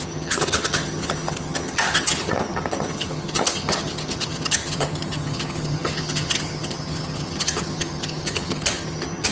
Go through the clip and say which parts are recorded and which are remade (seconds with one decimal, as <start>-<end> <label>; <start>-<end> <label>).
0.0-9.3 remade